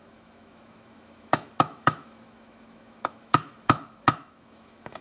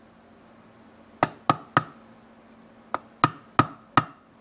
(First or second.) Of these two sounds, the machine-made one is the first